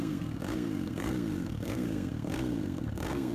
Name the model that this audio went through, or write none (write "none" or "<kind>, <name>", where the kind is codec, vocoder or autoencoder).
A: codec, SNAC